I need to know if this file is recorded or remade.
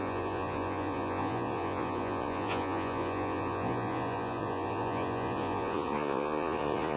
remade